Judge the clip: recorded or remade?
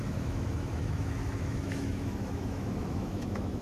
remade